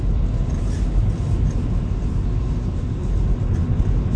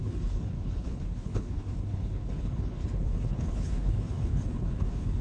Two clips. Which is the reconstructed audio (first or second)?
second